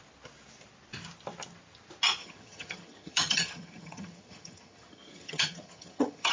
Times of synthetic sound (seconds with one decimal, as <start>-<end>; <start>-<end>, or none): 2.2-6.3